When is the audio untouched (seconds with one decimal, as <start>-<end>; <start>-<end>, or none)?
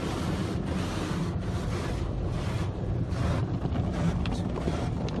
0.0-5.2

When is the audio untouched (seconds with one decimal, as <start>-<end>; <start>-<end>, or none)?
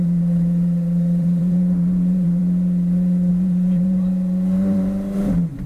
2.4-3.3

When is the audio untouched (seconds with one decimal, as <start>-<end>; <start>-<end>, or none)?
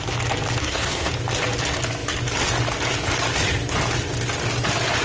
0.0-0.6; 1.1-5.0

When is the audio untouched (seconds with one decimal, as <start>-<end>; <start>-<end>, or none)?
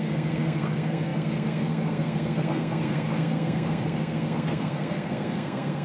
none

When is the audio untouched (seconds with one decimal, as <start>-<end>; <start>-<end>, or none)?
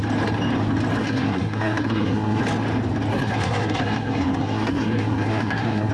0.0-1.0; 2.4-3.1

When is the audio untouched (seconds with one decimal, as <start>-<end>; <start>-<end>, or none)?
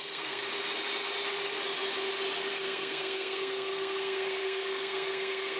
0.4-2.5